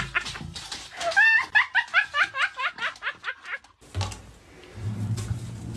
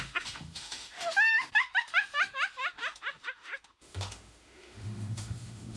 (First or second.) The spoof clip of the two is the second